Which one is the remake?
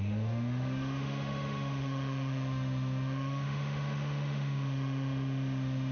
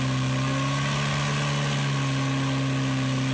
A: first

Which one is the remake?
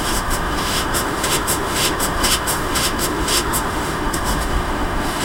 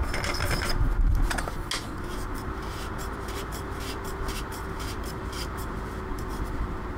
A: first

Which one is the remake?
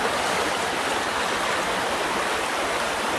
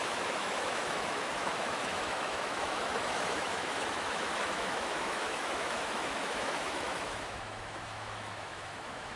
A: second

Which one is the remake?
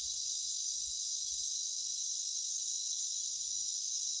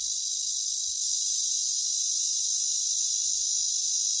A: first